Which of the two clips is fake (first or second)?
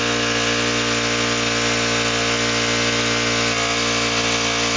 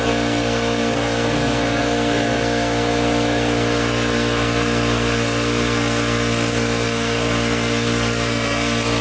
second